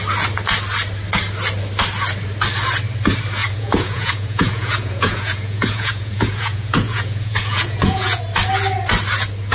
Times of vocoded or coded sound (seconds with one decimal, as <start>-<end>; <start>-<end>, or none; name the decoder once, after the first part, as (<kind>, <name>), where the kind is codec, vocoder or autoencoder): 3.4-8.2 (vocoder, Vocos)

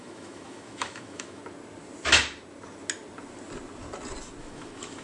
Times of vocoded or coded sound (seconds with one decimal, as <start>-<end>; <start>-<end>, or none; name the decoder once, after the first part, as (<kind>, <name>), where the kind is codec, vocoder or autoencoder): 0.0-1.4 (autoencoder, DAC-VAE); 4.4-5.0

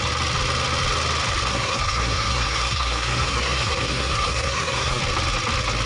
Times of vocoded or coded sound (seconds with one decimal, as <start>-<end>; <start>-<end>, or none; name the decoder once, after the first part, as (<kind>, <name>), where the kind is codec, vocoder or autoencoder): 1.5-5.0 (codec, SNAC)

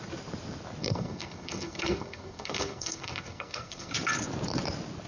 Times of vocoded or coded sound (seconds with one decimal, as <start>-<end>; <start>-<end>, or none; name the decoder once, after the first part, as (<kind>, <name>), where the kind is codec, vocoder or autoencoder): 0.8-3.9 (codec, SNAC)